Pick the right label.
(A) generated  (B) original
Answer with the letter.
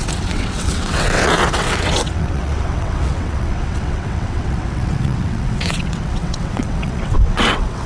A